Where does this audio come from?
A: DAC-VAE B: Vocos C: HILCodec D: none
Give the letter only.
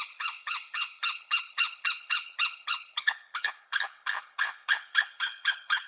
C